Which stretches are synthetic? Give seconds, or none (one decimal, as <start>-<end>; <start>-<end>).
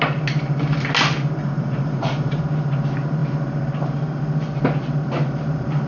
1.4-2.4